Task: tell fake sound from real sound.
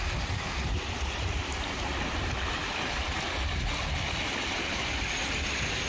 real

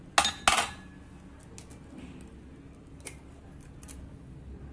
real